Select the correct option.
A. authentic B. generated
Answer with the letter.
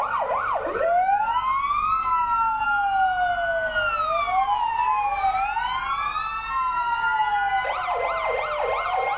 A